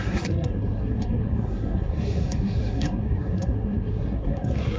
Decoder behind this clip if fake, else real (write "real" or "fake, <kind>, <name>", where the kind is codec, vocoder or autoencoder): fake, codec, SNAC